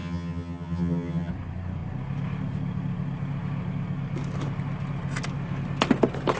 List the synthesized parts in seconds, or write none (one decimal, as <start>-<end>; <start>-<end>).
0.0-1.3

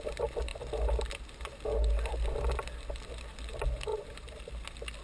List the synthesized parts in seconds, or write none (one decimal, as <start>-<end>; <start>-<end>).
3.9-4.4

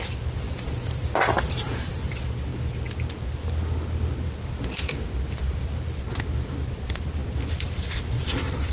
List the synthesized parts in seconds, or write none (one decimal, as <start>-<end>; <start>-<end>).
0.0-2.5; 5.9-8.7

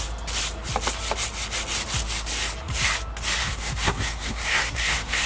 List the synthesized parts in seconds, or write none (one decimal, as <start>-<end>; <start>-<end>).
3.4-5.3

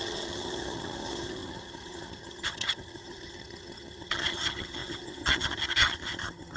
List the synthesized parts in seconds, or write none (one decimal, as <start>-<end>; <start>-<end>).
0.0-6.6

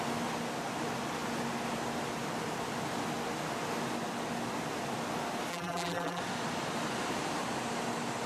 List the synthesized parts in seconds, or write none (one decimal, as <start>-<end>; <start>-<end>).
5.5-6.2